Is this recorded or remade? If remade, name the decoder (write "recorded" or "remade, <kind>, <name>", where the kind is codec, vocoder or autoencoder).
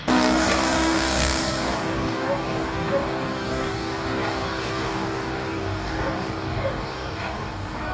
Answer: remade, codec, DAC